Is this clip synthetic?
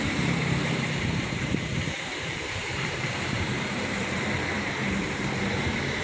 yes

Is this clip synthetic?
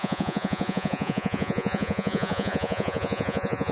yes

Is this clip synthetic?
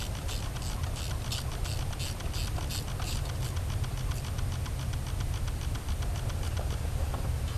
no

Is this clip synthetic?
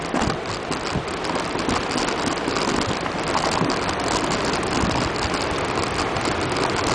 no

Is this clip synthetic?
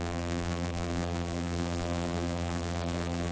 yes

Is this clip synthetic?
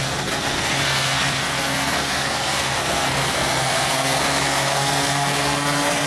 yes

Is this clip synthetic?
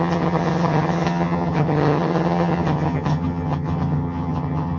yes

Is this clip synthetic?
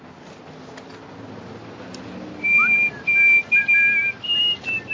no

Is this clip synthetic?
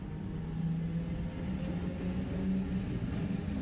no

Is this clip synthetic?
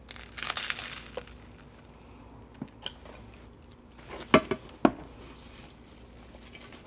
no